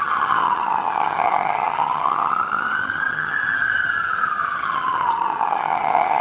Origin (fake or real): fake